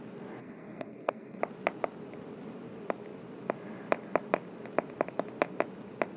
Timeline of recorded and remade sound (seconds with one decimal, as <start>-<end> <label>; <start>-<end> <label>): 0.0-0.4 recorded; 0.4-1.4 remade; 1.4-6.2 recorded